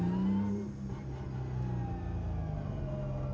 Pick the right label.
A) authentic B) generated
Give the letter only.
A